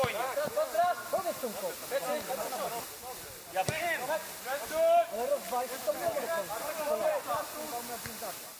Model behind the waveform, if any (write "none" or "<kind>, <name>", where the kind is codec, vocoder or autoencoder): none